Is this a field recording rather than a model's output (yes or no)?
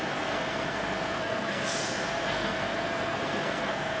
no